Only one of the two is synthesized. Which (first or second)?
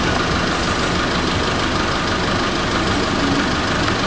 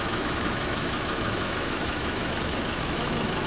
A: second